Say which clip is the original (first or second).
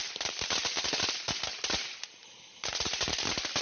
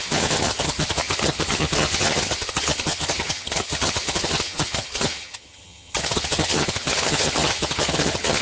first